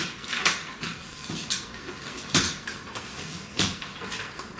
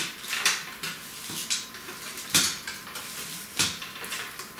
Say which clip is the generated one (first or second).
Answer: first